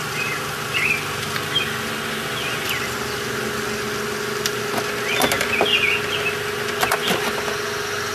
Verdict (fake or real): real